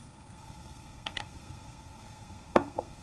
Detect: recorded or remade remade